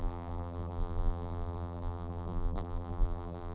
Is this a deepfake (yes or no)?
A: yes